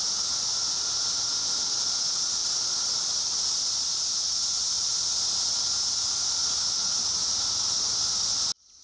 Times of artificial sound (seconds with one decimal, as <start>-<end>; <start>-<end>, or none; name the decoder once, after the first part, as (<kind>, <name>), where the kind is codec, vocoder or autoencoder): none